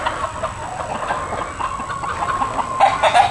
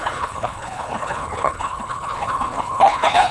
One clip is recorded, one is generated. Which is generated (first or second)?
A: second